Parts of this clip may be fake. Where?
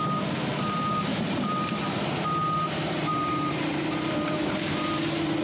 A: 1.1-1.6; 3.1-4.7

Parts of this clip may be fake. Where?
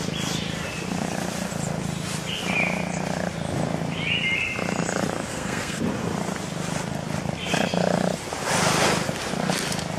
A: 5.3-5.8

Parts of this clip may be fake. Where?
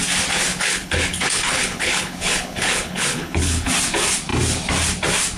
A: 0.5-3.7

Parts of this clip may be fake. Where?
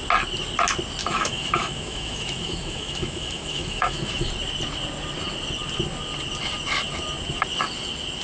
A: 1.0-4.3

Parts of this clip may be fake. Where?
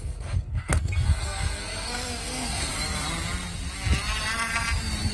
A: 0.0-2.7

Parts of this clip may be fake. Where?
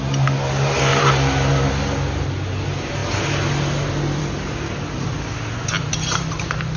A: none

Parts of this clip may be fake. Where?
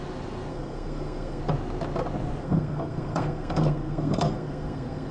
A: 0.5-1.4; 2.4-5.1